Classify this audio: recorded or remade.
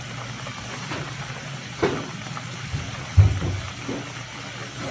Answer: recorded